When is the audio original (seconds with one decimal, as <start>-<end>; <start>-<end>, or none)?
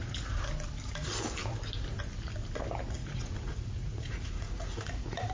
0.5-3.0